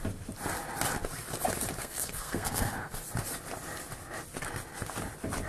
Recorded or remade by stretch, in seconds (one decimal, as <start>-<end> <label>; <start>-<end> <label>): 0.0-1.8 recorded; 1.8-3.0 remade; 3.0-5.5 recorded